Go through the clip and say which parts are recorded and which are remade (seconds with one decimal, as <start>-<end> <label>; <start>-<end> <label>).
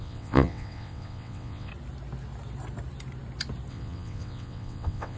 0.0-1.7 remade; 1.7-3.7 recorded; 3.7-5.2 remade